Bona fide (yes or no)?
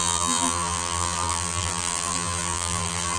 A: no